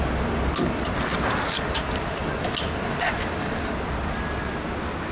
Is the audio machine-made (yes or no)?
no